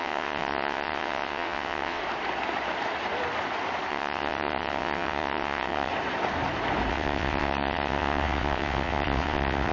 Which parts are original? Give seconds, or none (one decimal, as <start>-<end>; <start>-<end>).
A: 2.0-3.9; 5.9-6.9